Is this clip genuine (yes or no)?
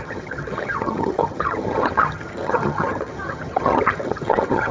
no